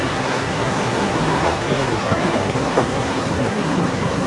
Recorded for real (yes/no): no